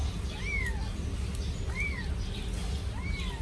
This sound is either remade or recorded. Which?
recorded